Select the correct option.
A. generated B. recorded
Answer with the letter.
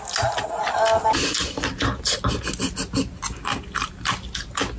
B